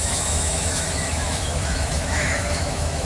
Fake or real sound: fake